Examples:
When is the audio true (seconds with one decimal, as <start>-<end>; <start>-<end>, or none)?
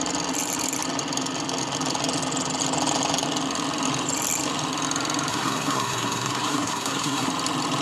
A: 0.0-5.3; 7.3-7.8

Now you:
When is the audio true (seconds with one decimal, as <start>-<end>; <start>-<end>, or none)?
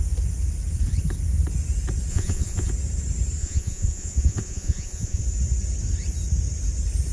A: 0.0-2.1; 2.7-3.4; 5.2-7.1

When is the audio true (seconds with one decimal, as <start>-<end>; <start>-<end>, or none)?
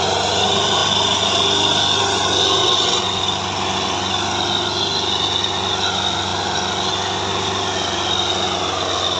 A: 0.0-2.6; 3.2-9.2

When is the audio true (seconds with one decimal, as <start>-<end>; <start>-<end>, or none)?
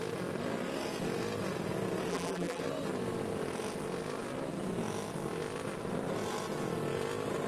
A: 0.0-2.1; 2.6-7.5